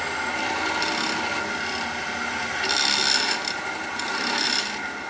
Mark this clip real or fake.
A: real